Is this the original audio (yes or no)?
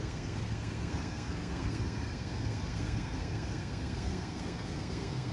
no